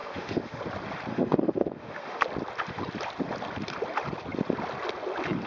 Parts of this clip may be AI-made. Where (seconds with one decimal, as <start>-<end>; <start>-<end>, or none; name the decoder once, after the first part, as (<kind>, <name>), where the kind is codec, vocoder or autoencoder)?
0.0-0.6 (autoencoder, DAC-VAE); 1.1-2.2